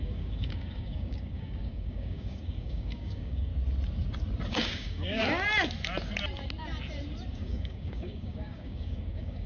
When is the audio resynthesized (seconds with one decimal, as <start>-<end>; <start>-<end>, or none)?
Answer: 0.0-3.5; 4.5-5.2; 7.3-9.5